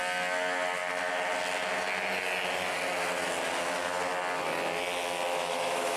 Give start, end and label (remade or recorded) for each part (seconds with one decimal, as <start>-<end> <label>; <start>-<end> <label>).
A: 0.0-5.3 recorded; 5.3-6.0 remade